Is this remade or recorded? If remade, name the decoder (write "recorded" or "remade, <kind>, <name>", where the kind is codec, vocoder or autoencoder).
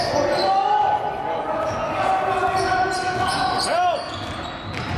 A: recorded